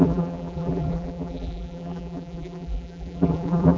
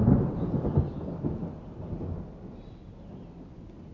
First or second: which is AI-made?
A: first